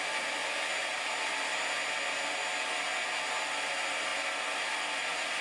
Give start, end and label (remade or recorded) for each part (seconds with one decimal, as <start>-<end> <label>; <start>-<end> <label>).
0.0-5.4 recorded